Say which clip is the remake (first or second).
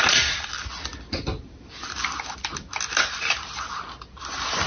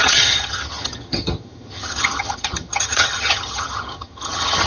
second